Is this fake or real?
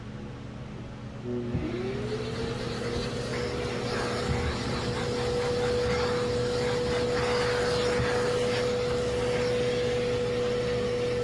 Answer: real